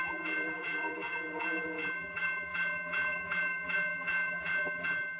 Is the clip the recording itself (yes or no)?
no